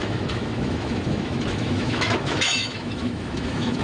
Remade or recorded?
remade